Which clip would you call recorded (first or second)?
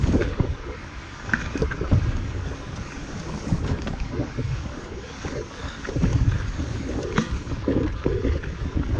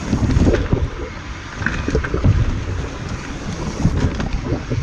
second